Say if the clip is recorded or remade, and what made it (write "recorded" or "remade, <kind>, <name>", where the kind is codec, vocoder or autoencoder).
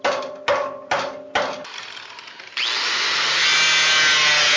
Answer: recorded